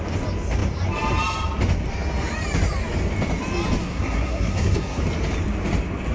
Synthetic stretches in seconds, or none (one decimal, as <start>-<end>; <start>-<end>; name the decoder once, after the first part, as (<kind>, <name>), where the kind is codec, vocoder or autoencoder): 3.8-5.0 (codec, SNAC)